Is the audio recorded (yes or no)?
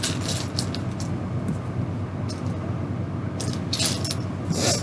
yes